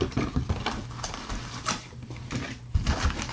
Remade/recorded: recorded